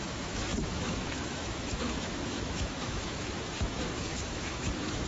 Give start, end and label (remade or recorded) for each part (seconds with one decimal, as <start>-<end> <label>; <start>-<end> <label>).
0.0-5.1 remade